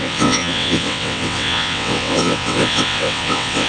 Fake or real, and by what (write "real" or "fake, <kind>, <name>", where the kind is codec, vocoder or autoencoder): fake, vocoder, WaveNeXt